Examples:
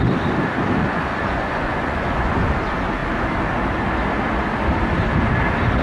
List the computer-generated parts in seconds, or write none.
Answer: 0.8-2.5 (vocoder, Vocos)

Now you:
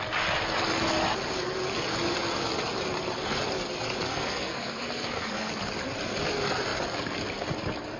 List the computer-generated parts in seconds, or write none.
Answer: 4.1-5.5 (codec, SNAC)

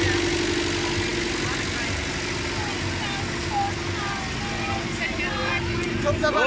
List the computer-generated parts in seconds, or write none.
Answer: none